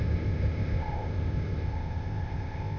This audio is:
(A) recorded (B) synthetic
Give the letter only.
B